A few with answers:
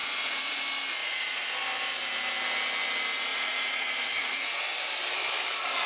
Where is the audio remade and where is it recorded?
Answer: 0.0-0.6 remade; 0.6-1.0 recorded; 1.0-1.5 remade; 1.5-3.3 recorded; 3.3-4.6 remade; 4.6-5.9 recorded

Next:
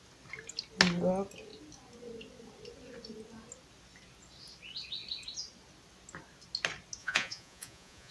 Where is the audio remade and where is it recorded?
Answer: 0.0-7.0 recorded; 7.0-8.1 remade

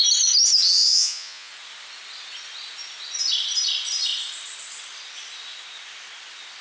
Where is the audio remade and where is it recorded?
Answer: 0.0-0.8 recorded; 0.8-1.5 remade; 1.5-6.6 recorded

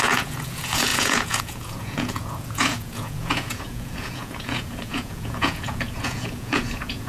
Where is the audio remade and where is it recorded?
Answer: 0.0-7.1 remade

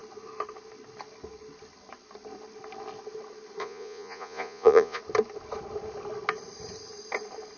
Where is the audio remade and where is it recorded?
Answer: 0.0-3.6 recorded; 3.6-5.0 remade; 5.0-7.6 recorded

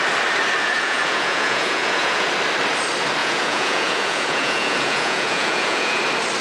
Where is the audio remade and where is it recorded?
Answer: 0.0-0.6 recorded; 0.6-2.3 remade; 2.3-3.2 recorded; 3.2-6.0 remade; 6.0-6.4 recorded